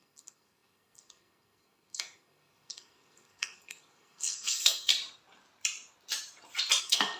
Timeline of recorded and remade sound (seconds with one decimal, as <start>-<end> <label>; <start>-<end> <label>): 0.0-4.9 remade; 4.9-6.8 recorded; 6.8-7.2 remade